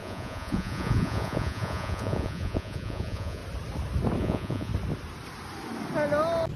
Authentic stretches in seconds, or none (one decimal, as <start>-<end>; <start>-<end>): 3.4-4.2; 4.7-6.6